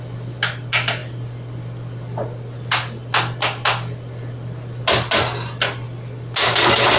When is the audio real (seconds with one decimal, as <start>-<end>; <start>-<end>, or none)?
0.0-7.0